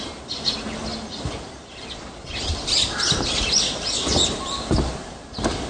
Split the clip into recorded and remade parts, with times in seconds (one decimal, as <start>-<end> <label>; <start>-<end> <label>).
0.0-5.7 recorded